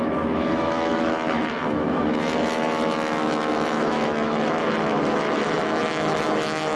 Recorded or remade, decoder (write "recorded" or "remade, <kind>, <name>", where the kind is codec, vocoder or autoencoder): remade, autoencoder, DAC-VAE